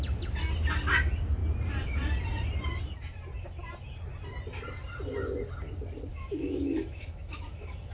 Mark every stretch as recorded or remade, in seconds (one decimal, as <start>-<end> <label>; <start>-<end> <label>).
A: 0.0-6.1 recorded; 6.1-7.9 remade